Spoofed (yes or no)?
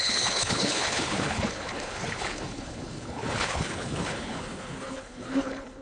yes